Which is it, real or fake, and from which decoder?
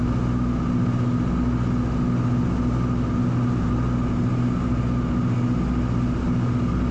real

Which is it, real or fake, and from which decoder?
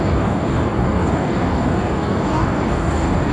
fake, codec, DAC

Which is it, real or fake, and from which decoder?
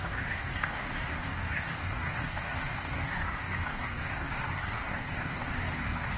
fake, codec, DAC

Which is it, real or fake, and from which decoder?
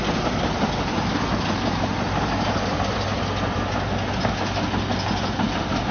real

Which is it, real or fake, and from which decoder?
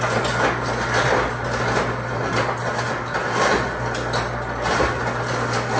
real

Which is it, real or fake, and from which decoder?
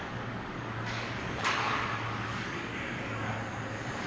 fake, codec, DAC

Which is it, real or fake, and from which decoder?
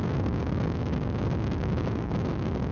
fake, codec, DAC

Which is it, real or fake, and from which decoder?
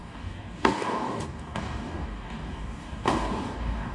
fake, codec, DAC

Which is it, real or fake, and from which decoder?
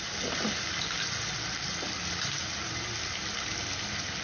real